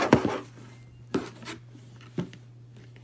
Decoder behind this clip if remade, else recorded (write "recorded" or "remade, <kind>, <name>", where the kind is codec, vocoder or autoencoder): recorded